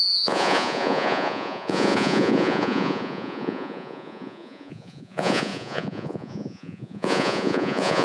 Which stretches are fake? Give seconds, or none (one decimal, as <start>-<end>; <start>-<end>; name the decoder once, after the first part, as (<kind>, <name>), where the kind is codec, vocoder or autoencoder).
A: 0.0-8.0 (vocoder, Vocos)